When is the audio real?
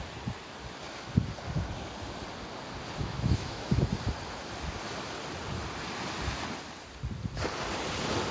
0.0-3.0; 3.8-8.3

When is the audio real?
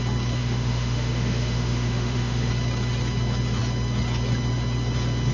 0.0-0.4; 2.5-5.3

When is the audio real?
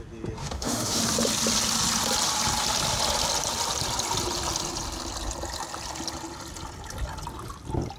0.0-0.4; 1.0-8.0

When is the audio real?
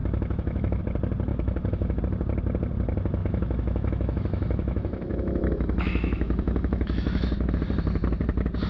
0.8-1.3; 2.0-3.2; 7.5-8.7